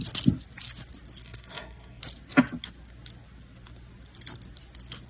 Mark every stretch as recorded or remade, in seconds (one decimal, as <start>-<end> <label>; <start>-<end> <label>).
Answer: 0.0-1.2 recorded; 1.2-2.0 remade; 2.0-5.1 recorded